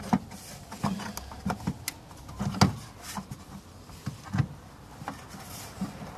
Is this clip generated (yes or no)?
no